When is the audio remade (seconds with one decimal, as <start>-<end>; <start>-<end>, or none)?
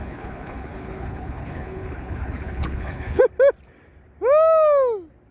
0.0-3.2